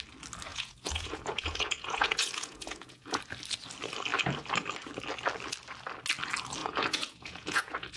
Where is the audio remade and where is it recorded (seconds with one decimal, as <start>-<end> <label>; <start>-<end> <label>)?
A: 0.0-0.5 recorded; 0.5-3.2 remade; 3.2-6.6 recorded; 6.6-8.0 remade